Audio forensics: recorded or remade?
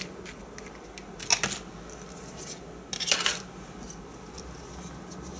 recorded